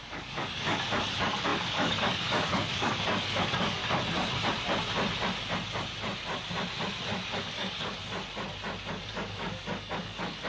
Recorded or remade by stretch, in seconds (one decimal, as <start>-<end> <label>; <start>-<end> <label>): 0.0-3.8 remade; 3.8-7.4 recorded; 7.4-8.0 remade; 8.0-8.9 recorded; 8.9-10.5 remade